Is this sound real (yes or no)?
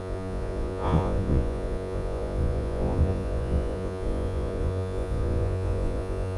no